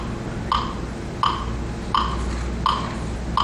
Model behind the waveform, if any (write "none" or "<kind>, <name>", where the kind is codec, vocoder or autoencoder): none